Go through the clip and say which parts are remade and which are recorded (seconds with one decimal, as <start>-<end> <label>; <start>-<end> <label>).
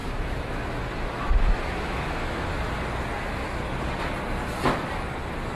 0.0-2.5 remade; 2.5-5.6 recorded